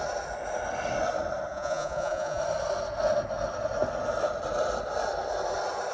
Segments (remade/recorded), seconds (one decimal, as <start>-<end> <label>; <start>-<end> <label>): 0.0-1.5 recorded; 1.5-2.4 remade; 2.4-5.9 recorded